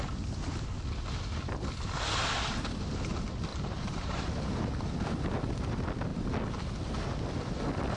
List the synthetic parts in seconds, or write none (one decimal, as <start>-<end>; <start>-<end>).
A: 3.5-4.7